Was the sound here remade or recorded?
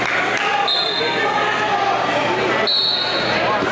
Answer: recorded